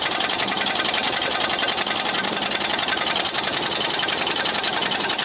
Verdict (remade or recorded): recorded